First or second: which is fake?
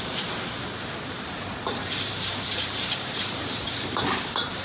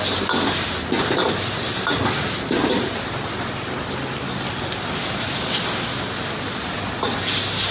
first